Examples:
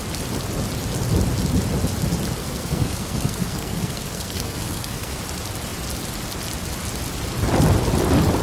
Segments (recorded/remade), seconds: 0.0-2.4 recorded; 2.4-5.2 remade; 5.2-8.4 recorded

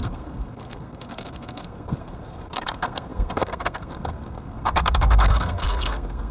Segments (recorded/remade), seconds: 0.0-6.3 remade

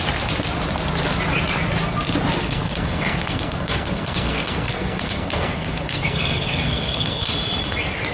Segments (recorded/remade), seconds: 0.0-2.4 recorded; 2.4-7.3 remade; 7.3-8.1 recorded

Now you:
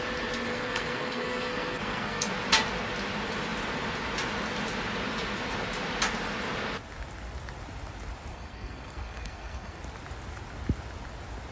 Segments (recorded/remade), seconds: 0.0-0.5 recorded; 0.5-2.3 remade; 2.3-8.3 recorded; 8.3-9.8 remade; 9.8-11.5 recorded

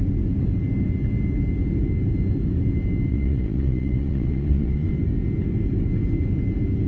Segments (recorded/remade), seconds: 0.0-3.1 recorded; 3.1-4.9 remade; 4.9-6.9 recorded

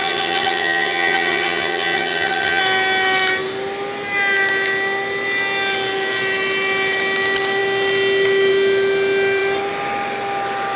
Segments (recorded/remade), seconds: 0.0-2.6 remade; 2.6-10.8 recorded